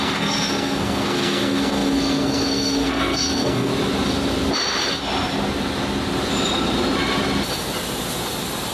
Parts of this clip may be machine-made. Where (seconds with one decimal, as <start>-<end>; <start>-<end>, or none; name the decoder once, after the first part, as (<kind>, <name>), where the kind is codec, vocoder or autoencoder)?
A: 0.0-3.7 (codec, SNAC)